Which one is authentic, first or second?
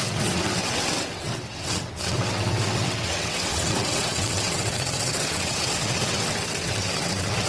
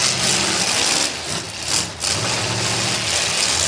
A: second